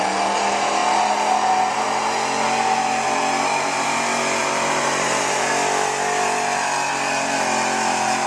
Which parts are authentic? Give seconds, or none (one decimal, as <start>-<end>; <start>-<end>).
0.0-4.4; 5.5-8.3